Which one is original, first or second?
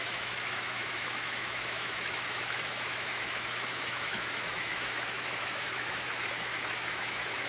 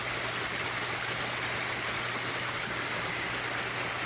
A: second